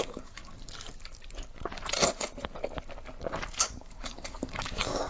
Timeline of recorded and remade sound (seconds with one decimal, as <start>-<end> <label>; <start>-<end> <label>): 0.0-0.5 remade; 0.5-3.6 recorded; 3.6-5.1 remade